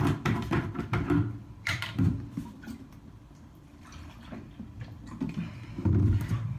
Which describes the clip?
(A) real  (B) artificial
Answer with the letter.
B